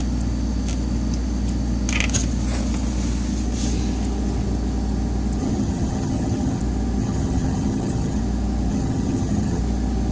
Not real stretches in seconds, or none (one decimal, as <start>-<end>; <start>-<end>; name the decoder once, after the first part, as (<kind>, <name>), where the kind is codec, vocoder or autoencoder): 5.4-6.6 (vocoder, HiFi-GAN); 7.0-8.2; 8.7-9.6